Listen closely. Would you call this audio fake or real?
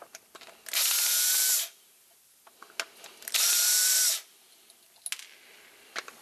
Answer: real